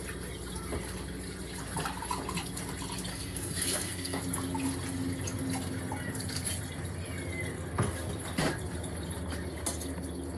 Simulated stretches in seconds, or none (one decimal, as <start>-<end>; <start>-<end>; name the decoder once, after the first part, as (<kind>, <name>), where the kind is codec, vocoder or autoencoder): 3.1-4.2 (codec, SNAC)